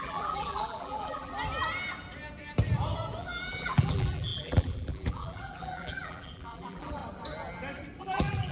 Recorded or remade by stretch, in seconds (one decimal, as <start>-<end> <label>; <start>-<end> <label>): 0.0-1.3 remade; 1.3-3.2 recorded; 3.2-7.0 remade; 7.0-8.0 recorded; 8.0-8.5 remade

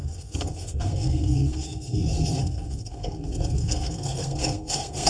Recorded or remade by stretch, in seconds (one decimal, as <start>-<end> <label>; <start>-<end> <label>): 0.0-5.1 remade

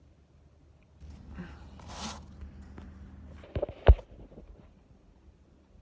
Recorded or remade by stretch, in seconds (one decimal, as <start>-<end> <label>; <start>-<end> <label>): 0.0-5.8 recorded